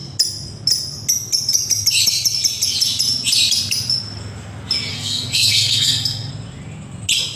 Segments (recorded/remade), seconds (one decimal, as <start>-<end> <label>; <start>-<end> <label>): 0.0-4.9 recorded; 4.9-6.3 remade; 6.3-7.4 recorded